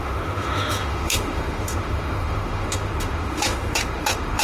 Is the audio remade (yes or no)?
yes